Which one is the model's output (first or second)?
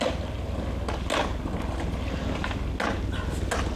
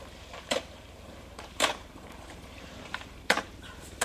second